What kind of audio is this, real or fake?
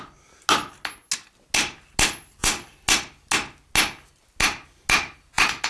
real